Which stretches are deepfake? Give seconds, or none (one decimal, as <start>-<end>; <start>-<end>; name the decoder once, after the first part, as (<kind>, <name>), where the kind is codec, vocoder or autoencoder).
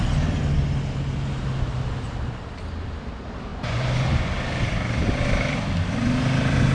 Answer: 3.5-4.3 (vocoder, Vocos)